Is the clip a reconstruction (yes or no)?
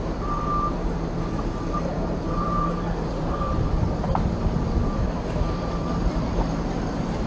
yes